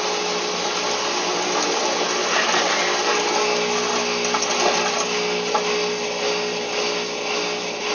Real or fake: real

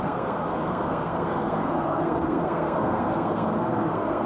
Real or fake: fake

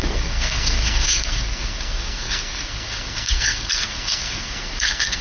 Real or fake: fake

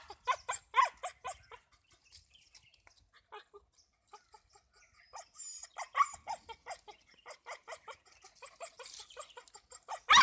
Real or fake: real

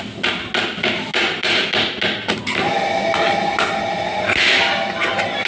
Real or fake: real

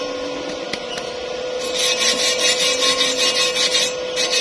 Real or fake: real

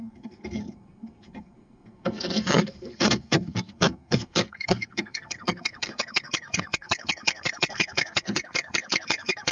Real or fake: fake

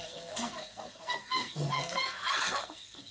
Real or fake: fake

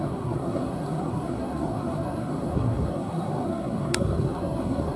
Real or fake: fake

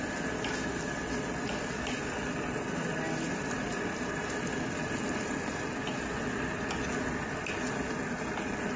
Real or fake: real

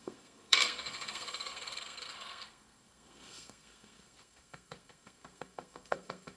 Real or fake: fake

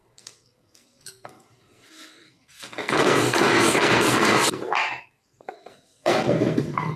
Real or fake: fake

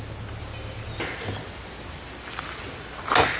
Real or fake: real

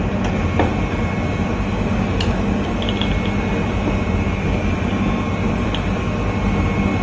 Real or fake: real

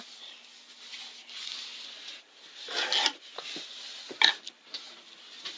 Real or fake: real